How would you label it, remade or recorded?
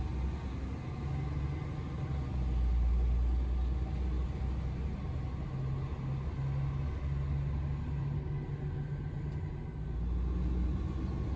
recorded